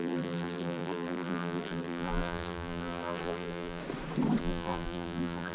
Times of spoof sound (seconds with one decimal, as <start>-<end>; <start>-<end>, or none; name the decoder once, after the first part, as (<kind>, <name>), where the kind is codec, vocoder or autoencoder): 0.0-3.8 (vocoder, BigVGAN v2); 4.4-5.5